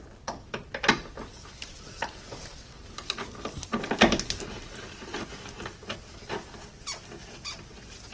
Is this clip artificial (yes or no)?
no